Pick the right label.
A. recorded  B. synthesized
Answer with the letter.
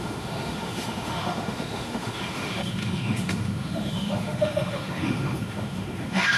B